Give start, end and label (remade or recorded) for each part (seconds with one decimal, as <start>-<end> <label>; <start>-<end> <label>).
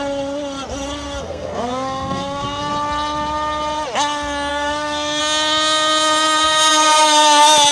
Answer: 0.0-1.2 recorded; 1.2-2.7 remade; 2.7-4.5 recorded; 4.5-5.2 remade; 5.2-7.7 recorded